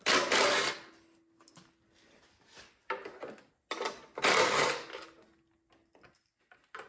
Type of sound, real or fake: real